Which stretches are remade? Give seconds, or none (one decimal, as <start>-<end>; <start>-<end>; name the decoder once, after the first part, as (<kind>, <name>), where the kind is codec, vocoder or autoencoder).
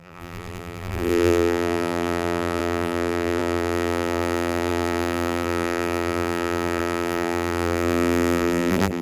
0.0-9.0 (vocoder, BigVGAN v2)